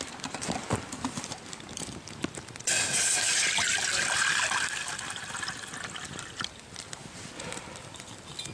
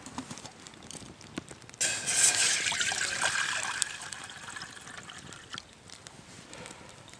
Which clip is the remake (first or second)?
first